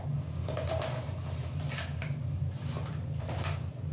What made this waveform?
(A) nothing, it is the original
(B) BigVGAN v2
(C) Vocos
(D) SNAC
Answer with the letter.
A